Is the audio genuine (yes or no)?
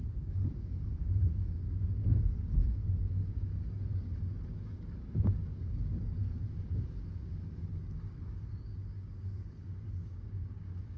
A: no